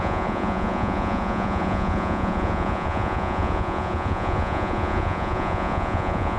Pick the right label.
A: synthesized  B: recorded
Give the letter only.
A